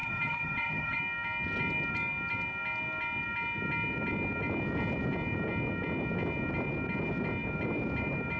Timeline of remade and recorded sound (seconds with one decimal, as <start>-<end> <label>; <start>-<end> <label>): 0.0-1.0 remade; 1.0-8.4 recorded